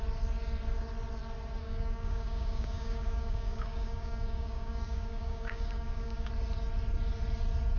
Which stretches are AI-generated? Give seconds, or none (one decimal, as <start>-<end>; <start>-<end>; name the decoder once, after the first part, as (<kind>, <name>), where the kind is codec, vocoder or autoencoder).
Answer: 1.6-6.3 (codec, DAC)